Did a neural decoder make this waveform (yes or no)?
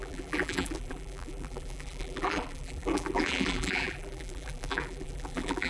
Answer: yes